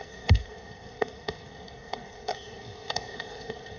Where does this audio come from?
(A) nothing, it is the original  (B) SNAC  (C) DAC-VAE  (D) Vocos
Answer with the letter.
B